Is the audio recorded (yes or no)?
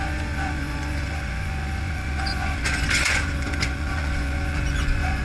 no